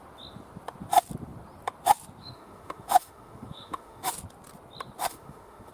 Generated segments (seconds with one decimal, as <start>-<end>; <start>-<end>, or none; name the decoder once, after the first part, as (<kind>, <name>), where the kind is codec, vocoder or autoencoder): 2.2-4.1 (autoencoder, DAC-VAE); 5.0-5.7